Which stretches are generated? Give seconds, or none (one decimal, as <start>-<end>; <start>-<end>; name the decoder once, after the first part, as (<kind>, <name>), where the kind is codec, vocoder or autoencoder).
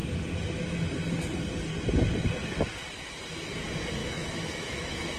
4.0-5.2 (autoencoder, DAC-VAE)